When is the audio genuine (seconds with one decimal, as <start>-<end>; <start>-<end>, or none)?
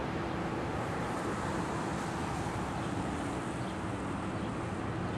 1.9-5.2